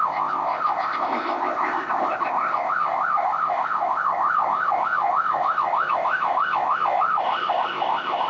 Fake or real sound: fake